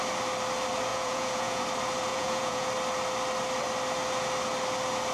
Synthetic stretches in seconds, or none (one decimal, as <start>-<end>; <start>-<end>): 0.9-1.6; 2.1-2.7